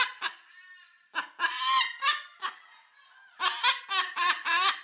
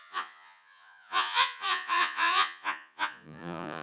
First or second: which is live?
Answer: first